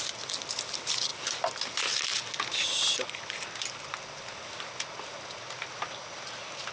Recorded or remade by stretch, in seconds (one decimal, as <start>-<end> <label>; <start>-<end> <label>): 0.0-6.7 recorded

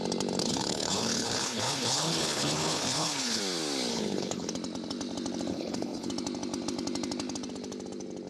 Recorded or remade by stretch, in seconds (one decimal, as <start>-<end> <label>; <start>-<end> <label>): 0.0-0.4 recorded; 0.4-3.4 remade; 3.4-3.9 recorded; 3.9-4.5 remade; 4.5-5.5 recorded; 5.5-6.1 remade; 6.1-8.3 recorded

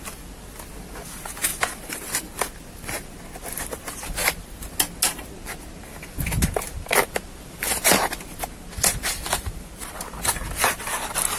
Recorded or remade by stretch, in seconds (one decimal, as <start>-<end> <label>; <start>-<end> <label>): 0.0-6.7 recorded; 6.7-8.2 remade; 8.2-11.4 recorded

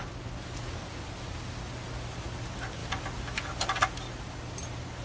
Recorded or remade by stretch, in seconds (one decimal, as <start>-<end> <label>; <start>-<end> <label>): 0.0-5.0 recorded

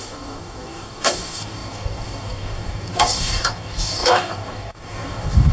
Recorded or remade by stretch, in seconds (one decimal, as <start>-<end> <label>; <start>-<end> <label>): 0.0-5.5 remade

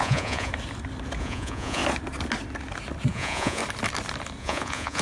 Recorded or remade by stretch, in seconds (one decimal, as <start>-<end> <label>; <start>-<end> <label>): 0.0-0.5 remade; 0.5-1.2 recorded; 1.2-1.8 remade; 1.8-3.1 recorded; 3.1-3.6 remade; 3.6-4.4 recorded; 4.4-5.0 remade